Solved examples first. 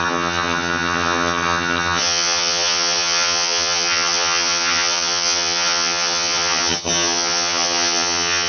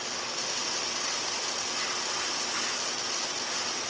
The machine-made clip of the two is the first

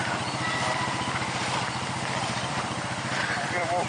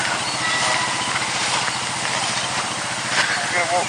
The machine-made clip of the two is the first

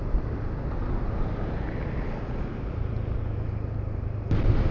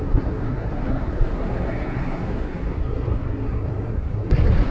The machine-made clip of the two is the second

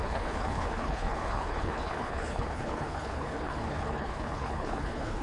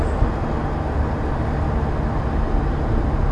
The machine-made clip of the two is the first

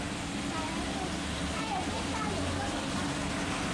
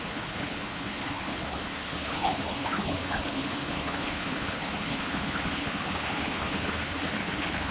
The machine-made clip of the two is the second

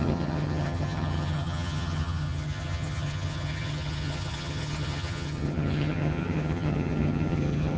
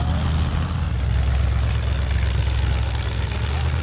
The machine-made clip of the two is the first